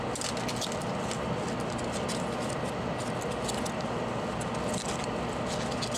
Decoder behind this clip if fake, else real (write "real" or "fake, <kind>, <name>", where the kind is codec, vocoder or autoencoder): real